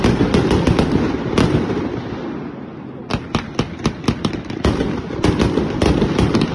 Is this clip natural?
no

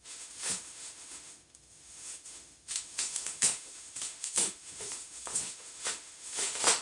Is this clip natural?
no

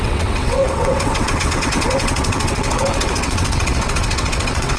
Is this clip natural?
no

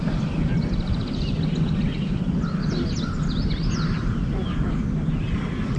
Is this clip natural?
yes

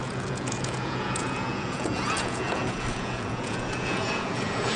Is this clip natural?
no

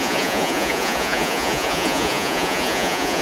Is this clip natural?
no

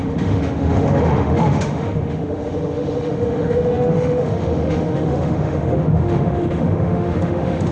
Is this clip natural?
no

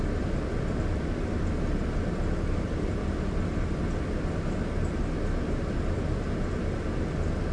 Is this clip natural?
yes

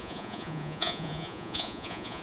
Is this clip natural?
no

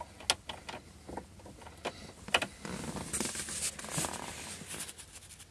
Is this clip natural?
yes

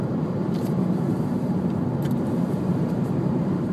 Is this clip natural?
no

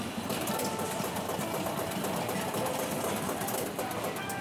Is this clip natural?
yes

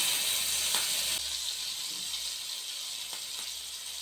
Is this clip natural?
yes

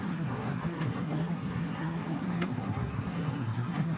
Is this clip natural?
no